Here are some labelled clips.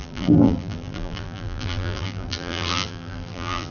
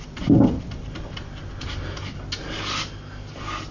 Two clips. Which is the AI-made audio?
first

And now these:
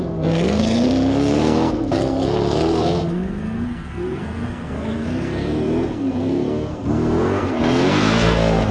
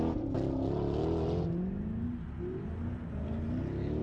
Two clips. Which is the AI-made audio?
first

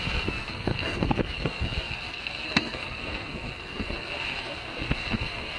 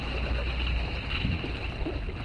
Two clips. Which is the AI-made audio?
first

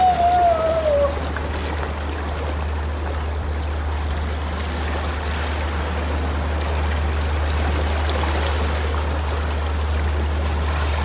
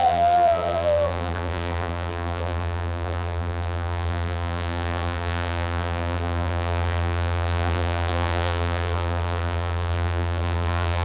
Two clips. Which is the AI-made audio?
second